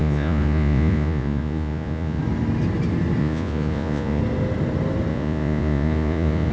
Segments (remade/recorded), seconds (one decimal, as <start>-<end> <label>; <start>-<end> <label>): 0.0-2.2 remade; 2.2-3.2 recorded; 3.2-4.2 remade; 4.2-5.1 recorded; 5.1-6.5 remade